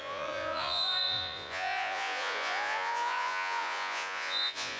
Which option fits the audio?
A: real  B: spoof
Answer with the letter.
B